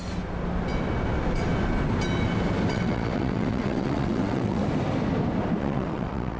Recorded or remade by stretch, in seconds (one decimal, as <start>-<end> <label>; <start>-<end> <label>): 0.0-2.7 recorded; 2.7-4.6 remade; 4.6-5.6 recorded; 5.6-6.4 remade

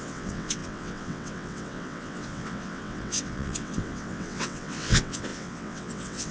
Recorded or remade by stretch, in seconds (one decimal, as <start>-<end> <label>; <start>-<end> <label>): 0.0-6.3 remade

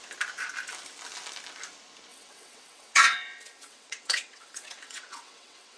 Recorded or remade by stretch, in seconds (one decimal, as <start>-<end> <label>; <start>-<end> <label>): 0.0-2.1 recorded; 2.1-5.8 remade

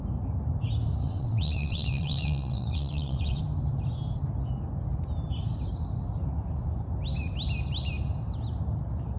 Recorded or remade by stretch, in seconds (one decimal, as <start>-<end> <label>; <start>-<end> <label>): 0.0-1.0 recorded; 1.0-3.4 remade; 3.4-9.2 recorded

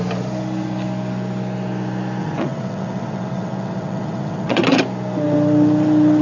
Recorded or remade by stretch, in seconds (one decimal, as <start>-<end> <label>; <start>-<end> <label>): 0.0-2.2 recorded; 2.2-4.8 remade; 4.8-6.2 recorded

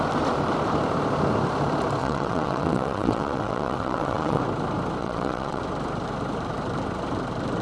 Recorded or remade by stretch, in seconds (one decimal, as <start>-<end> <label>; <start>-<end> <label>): 0.0-2.0 recorded; 2.0-4.4 remade; 4.4-5.0 recorded; 5.0-5.6 remade; 5.6-7.6 recorded

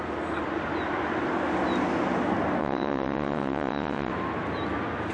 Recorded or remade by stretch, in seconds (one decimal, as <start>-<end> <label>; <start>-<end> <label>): 0.0-2.6 recorded; 2.6-4.1 remade; 4.1-5.1 recorded

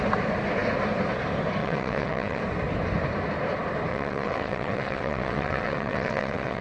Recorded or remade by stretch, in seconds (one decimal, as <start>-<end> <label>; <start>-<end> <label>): 0.0-1.6 recorded; 1.6-2.4 remade; 2.4-3.9 recorded; 3.9-6.6 remade